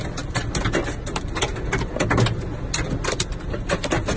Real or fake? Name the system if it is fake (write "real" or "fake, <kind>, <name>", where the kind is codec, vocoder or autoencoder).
real